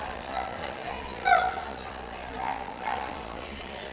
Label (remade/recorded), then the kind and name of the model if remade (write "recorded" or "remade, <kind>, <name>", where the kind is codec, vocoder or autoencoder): remade, vocoder, Vocos